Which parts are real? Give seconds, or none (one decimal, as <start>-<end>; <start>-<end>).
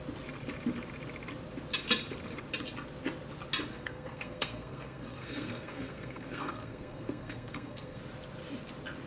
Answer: 0.0-3.7; 8.0-9.1